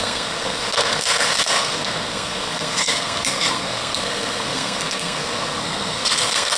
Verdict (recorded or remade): remade